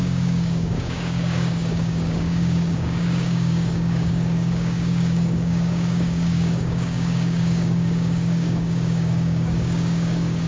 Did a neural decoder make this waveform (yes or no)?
yes